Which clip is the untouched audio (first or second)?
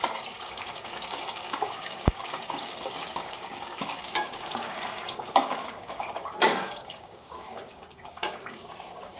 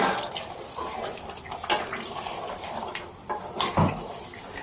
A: second